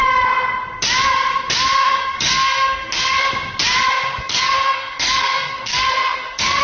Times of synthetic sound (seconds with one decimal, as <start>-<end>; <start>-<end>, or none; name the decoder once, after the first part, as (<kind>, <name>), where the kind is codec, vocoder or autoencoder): 1.8-3.2 (codec, SNAC); 4.2-6.6